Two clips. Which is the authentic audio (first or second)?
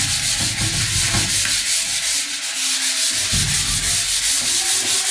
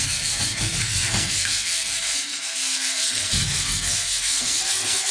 first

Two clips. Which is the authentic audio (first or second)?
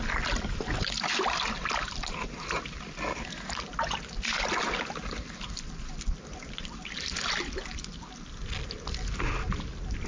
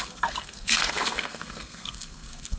first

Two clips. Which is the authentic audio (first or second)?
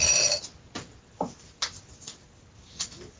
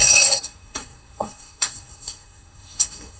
first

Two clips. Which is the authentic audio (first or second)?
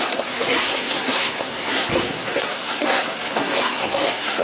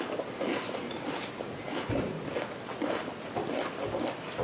second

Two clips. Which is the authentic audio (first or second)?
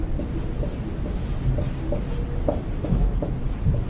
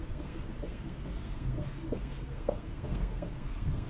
first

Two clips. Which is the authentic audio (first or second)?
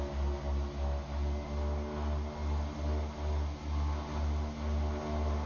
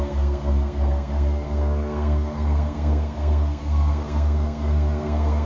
first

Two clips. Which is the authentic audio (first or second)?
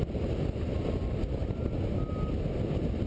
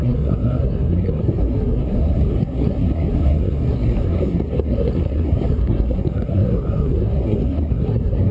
first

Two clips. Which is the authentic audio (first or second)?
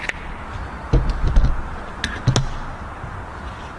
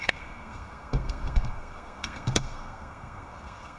first